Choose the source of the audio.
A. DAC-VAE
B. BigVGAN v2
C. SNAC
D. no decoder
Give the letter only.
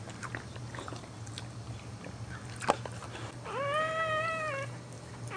D